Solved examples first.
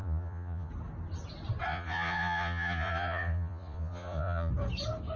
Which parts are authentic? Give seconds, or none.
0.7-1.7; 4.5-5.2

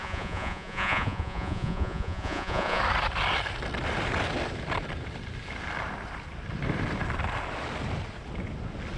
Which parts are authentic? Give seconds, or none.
2.8-9.0